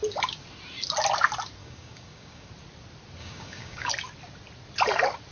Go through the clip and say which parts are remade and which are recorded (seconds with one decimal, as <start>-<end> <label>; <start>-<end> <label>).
0.0-1.6 recorded; 1.6-2.5 remade; 2.5-3.2 recorded; 3.2-3.9 remade; 3.9-5.3 recorded